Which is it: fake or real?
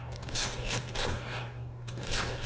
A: fake